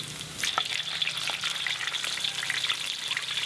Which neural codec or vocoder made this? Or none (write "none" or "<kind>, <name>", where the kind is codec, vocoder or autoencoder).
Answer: none